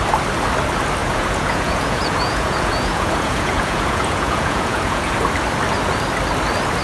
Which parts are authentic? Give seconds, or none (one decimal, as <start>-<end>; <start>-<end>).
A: 0.0-1.0; 5.1-6.8